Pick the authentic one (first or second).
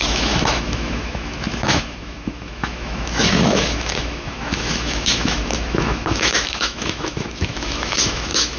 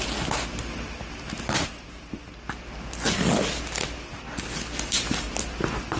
second